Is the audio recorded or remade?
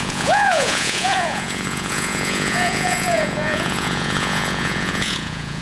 remade